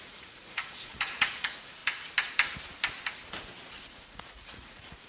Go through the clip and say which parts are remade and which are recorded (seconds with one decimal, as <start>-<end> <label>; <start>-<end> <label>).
0.0-1.8 remade; 1.8-3.9 recorded; 3.9-5.1 remade

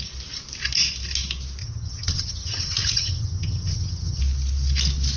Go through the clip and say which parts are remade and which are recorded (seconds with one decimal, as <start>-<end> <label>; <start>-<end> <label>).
0.0-1.6 recorded; 1.6-4.2 remade; 4.2-5.2 recorded

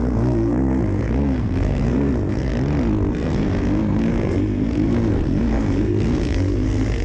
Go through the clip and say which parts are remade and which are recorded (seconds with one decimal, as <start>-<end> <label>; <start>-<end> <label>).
0.0-2.5 remade; 2.5-3.1 recorded; 3.1-7.0 remade

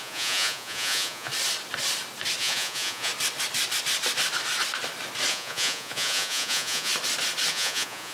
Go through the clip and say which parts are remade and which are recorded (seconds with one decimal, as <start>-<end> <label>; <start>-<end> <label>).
0.0-1.3 remade; 1.3-2.4 recorded; 2.4-3.1 remade; 3.1-5.3 recorded; 5.3-6.9 remade; 6.9-7.5 recorded; 7.5-8.1 remade